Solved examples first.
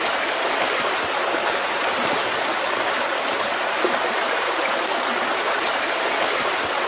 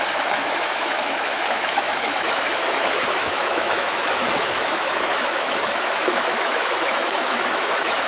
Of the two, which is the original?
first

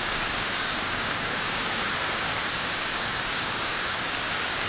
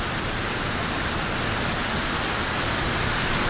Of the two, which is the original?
second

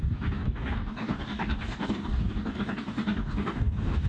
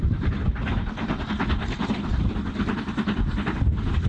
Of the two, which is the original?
second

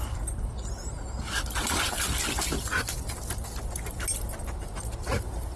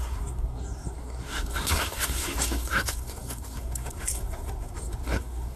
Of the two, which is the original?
first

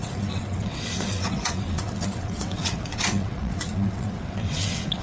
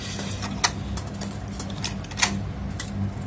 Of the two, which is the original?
second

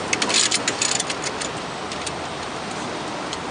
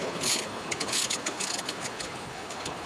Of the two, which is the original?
first